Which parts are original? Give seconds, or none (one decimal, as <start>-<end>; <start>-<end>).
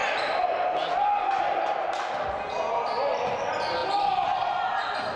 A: 0.0-5.2